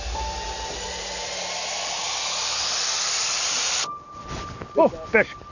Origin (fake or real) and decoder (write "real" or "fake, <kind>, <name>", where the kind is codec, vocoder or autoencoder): real